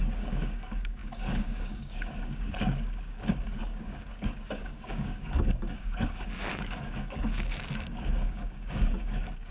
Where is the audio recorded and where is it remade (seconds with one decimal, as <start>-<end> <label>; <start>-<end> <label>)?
0.0-9.5 remade